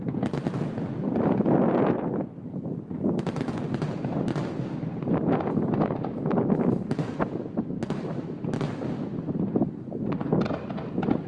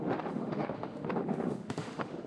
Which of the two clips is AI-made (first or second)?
second